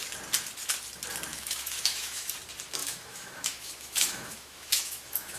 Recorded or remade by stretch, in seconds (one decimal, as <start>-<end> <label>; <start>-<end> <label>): 0.0-1.3 recorded; 1.3-2.3 remade; 2.3-2.8 recorded; 2.8-5.4 remade